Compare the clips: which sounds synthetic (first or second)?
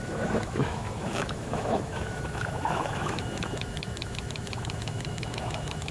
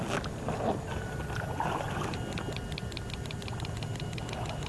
first